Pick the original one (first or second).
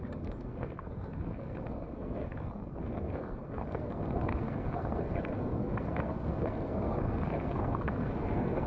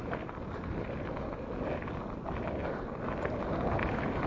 second